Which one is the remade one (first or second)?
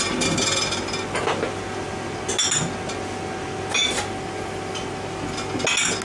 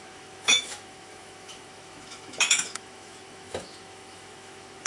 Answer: second